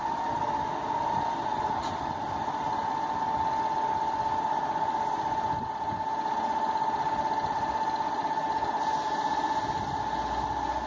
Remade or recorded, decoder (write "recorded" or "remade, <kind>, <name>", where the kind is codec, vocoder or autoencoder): recorded